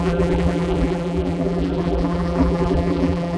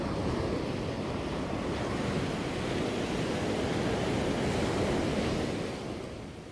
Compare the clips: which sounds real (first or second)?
second